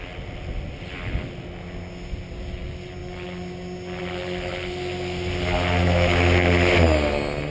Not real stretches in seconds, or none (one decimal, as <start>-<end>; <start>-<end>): 5.8-6.5